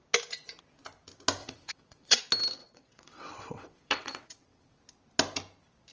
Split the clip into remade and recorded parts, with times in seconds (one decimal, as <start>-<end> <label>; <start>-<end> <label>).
0.0-1.4 recorded; 1.4-2.2 remade; 2.2-2.6 recorded; 2.6-4.8 remade; 4.8-5.9 recorded